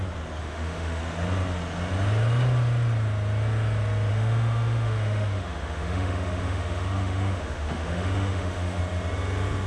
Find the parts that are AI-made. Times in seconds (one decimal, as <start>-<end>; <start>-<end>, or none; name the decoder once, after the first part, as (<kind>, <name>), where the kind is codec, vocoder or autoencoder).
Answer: 0.4-1.0 (autoencoder, DAC-VAE); 4.1-8.8